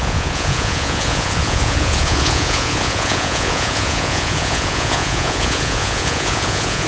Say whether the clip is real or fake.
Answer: fake